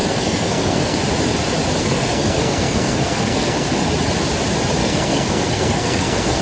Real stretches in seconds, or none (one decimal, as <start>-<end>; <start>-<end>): 1.0-1.8; 3.9-4.8